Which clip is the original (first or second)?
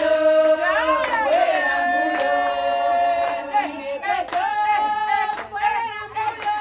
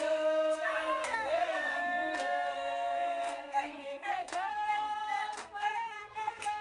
first